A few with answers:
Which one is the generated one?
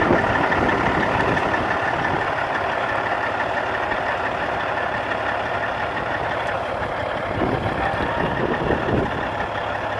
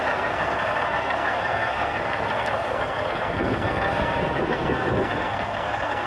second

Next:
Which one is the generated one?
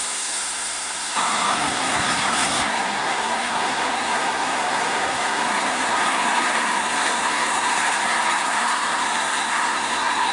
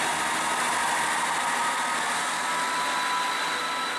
first